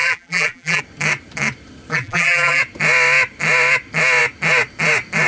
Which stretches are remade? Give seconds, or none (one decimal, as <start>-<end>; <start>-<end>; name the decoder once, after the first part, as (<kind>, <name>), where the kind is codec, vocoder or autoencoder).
0.0-0.8 (vocoder, BigVGAN v2); 1.9-2.6